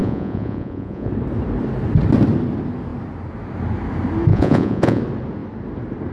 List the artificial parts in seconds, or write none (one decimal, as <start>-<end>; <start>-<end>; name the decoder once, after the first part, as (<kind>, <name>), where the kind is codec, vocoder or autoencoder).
0.0-1.1 (vocoder, Vocos); 4.3-5.0